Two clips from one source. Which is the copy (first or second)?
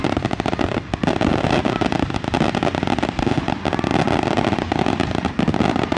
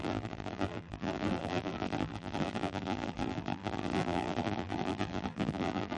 second